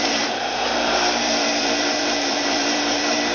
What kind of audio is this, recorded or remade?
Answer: remade